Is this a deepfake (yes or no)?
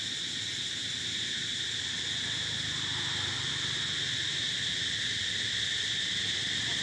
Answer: no